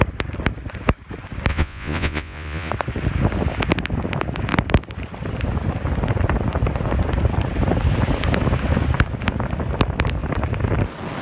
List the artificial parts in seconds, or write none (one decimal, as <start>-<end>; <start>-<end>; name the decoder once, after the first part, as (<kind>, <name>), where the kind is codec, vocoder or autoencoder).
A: 1.5-2.7 (vocoder, Vocos)